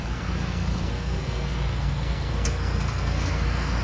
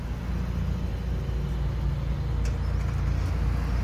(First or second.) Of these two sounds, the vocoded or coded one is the first